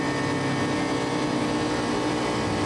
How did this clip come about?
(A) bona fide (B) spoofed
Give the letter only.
A